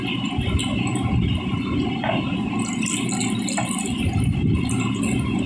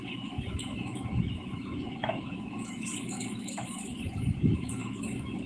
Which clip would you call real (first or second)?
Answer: first